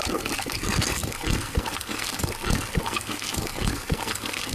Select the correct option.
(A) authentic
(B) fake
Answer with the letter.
B